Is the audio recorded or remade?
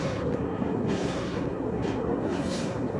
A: remade